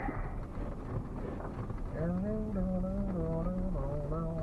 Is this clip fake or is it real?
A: real